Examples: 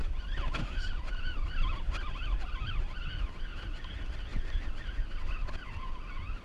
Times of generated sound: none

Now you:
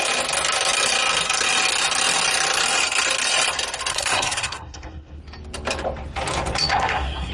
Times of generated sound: 3.9-5.2 (codec, SNAC); 6.7-7.3

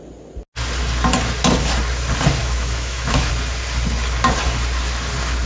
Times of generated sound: 2.4-3.3 (autoencoder, DAC-VAE)

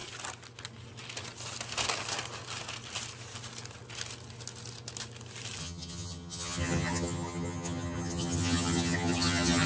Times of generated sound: 5.6-9.7 (vocoder, HiFi-GAN)

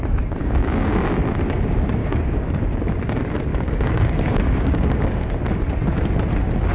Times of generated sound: 0.4-1.0 (codec, DAC); 2.0-2.6; 3.5-5.3

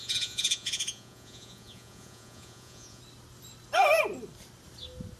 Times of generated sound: 0.0-3.0 (vocoder, Vocos)

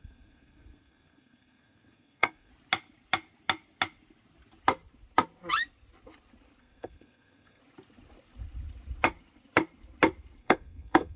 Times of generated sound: 0.0-2.5 (codec, SNAC); 6.6-7.6; 10.4-11.2